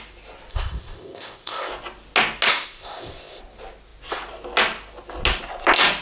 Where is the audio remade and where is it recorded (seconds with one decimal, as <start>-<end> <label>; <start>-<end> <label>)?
0.0-0.5 recorded; 0.5-1.7 remade; 1.7-2.5 recorded; 2.5-3.4 remade; 3.4-6.0 recorded